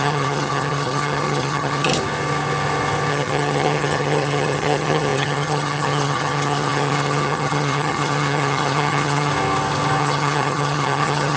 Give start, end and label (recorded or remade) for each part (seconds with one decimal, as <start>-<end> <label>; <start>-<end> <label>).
0.0-1.9 remade; 1.9-3.1 recorded; 3.1-9.3 remade; 9.3-10.0 recorded; 10.0-11.4 remade